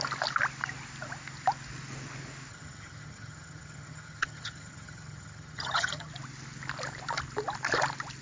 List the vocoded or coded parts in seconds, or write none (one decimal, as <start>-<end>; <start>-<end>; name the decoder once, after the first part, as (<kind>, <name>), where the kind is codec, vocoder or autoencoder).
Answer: 2.5-6.1 (vocoder, HiFi-GAN)